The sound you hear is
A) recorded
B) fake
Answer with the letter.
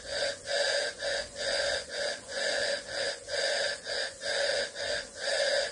B